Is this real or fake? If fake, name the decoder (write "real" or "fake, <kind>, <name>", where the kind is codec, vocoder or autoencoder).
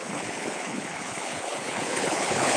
fake, codec, HILCodec